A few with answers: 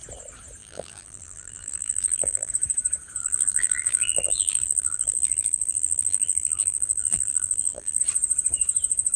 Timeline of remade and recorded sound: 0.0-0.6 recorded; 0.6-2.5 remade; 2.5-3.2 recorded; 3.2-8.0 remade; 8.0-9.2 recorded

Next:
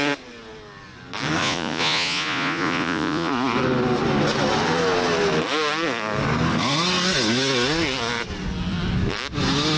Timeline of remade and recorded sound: 0.0-1.4 recorded; 1.4-3.3 remade; 3.3-9.8 recorded

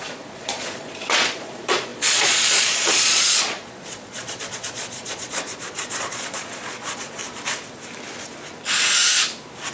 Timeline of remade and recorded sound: 0.0-7.2 remade; 7.2-9.7 recorded

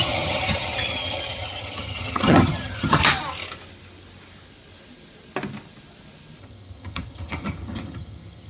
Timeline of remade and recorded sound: 0.0-3.0 remade; 3.0-6.4 recorded; 6.4-8.5 remade

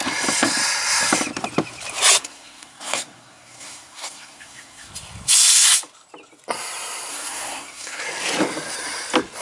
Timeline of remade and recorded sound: 0.0-2.2 recorded; 2.2-4.9 remade; 4.9-7.1 recorded; 7.1-8.0 remade; 8.0-9.4 recorded

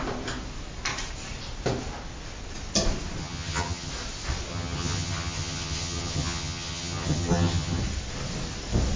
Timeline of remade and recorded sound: 0.0-3.2 recorded; 3.2-3.9 remade; 3.9-4.5 recorded; 4.5-7.8 remade; 7.8-9.0 recorded